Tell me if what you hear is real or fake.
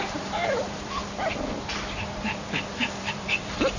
fake